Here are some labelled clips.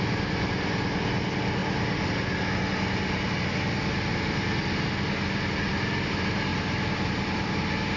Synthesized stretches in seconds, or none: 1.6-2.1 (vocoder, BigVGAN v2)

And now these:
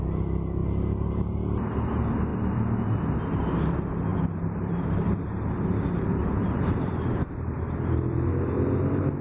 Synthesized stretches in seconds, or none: 0.6-1.4 (vocoder, BigVGAN v2); 4.1-8.3

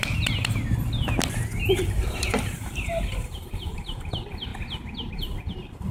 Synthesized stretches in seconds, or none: 0.0-0.6 (vocoder, BigVGAN v2); 1.7-4.5; 5.1-5.9